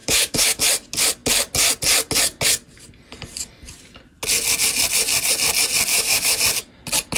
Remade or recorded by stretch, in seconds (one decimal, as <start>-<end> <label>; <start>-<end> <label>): 0.0-0.6 remade; 0.6-5.9 recorded; 5.9-6.4 remade; 6.4-7.2 recorded